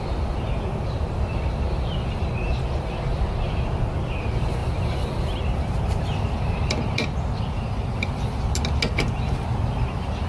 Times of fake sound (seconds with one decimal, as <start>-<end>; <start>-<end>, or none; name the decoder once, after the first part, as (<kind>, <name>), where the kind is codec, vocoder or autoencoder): none